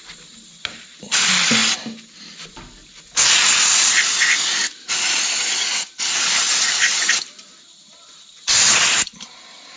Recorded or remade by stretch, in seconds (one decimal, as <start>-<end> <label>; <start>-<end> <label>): 0.0-1.6 remade; 1.6-6.7 recorded; 6.7-9.8 remade